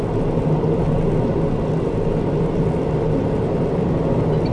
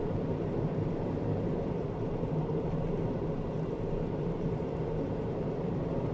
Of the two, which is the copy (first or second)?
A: second